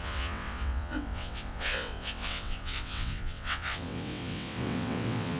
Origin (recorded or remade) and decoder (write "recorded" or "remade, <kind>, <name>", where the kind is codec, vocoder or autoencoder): remade, vocoder, WaveNeXt